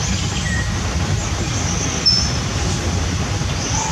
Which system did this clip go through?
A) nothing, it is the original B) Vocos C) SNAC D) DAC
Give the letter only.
A